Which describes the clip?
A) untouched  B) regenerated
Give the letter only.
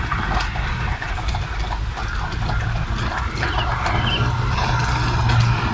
A